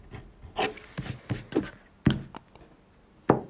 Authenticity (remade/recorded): recorded